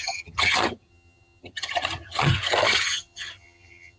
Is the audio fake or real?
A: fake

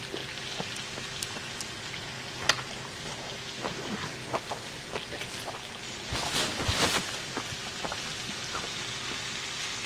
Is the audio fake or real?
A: real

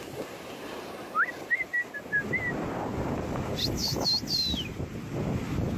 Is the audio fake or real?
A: real